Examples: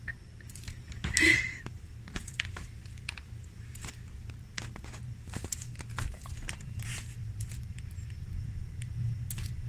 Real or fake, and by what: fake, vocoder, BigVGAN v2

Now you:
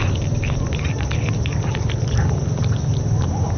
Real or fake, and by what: real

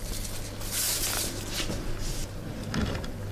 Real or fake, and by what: real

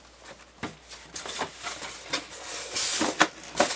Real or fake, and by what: real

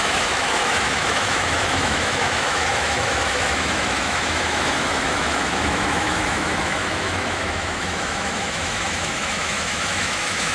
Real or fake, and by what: fake, autoencoder, DAC-VAE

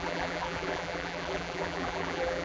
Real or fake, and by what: fake, vocoder, BigVGAN v2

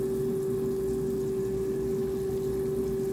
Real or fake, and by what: real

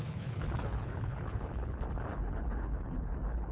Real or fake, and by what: fake, codec, HILCodec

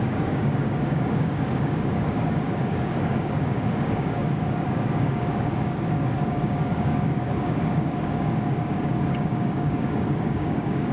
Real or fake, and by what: fake, codec, DAC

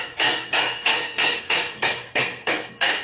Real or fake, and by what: fake, codec, SNAC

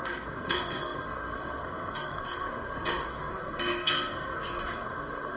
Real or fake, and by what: fake, codec, SNAC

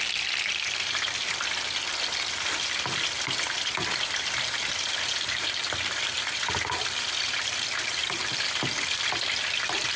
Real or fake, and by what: real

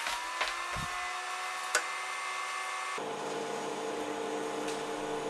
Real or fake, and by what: real